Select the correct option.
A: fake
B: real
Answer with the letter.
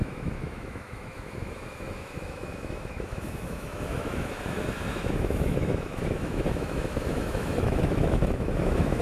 A